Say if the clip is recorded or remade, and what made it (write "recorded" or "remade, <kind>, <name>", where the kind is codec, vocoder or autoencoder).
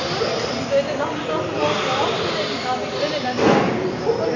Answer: recorded